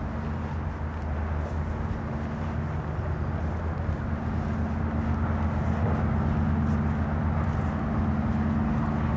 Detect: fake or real real